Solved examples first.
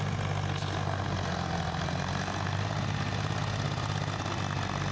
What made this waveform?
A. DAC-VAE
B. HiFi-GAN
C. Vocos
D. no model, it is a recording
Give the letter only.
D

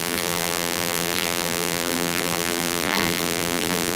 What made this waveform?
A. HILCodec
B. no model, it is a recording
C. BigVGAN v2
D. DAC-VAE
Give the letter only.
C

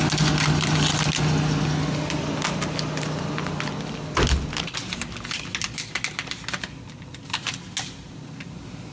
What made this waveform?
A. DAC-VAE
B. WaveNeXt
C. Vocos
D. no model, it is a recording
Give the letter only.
D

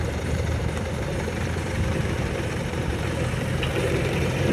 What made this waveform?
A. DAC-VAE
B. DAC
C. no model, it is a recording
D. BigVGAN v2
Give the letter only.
D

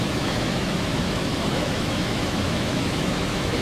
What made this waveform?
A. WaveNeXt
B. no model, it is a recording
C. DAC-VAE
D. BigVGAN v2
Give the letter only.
C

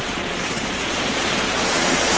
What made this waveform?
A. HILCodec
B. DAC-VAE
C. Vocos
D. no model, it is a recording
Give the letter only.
C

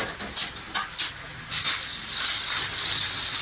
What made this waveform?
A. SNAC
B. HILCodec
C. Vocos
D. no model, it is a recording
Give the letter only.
D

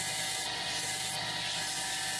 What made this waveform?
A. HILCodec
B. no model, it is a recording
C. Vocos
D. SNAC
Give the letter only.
B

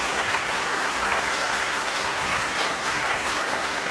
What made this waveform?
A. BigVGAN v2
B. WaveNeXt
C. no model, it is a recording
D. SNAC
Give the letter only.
D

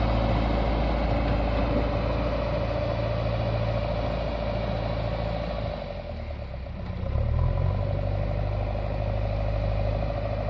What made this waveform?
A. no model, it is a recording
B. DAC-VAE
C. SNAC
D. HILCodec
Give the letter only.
A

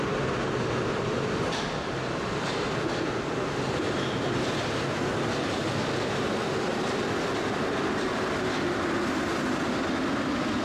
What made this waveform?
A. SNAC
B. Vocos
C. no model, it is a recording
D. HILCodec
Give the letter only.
C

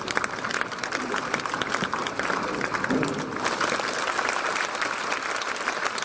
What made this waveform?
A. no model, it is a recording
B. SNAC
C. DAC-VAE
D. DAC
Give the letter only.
A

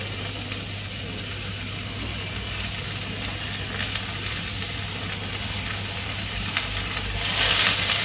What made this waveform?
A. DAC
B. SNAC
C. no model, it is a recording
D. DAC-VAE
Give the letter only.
C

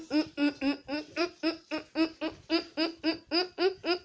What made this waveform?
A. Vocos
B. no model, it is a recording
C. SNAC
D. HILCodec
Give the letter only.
B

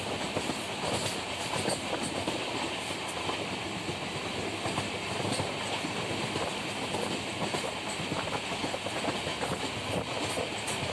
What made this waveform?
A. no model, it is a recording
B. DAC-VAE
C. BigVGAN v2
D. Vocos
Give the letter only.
A